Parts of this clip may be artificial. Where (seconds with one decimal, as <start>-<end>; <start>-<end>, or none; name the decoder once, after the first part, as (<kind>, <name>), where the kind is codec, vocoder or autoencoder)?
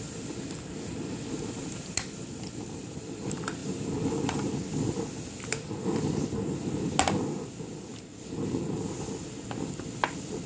none